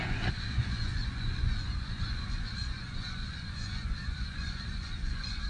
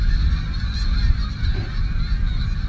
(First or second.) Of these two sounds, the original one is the second